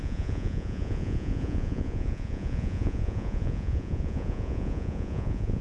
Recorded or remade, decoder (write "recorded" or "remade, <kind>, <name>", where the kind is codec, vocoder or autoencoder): remade, vocoder, Vocos